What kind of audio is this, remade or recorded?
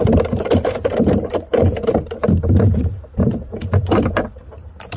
remade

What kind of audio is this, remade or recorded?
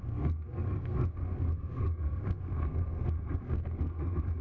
remade